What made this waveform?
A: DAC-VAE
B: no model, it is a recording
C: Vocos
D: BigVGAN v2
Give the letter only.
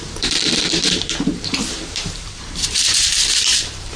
D